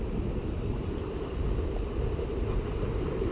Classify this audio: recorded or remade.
recorded